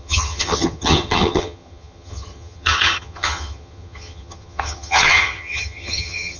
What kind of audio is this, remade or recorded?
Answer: remade